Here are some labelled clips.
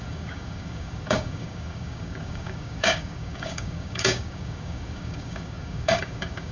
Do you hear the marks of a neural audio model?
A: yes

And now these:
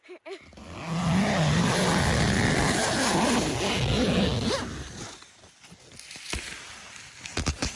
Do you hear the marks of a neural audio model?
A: no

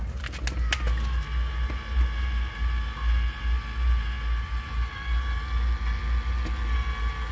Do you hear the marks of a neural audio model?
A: no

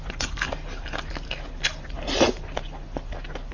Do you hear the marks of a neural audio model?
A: no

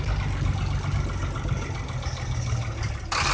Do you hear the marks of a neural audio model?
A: no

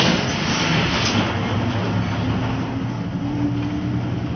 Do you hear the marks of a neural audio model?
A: no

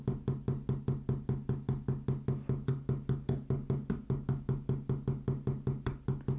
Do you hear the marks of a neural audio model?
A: no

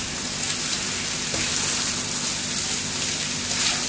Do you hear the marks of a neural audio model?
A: no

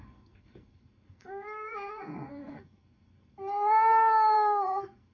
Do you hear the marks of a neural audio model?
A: yes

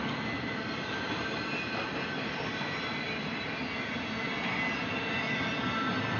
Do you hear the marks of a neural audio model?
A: no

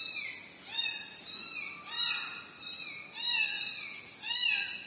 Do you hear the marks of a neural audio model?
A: no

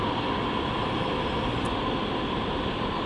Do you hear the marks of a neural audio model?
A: no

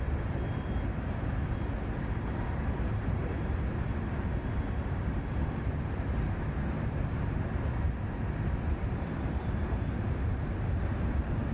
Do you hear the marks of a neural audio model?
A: yes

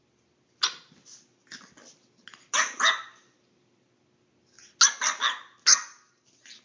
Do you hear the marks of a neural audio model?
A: no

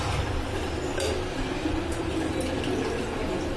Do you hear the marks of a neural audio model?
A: no